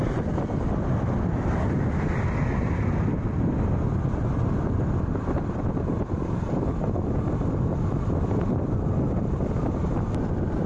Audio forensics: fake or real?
real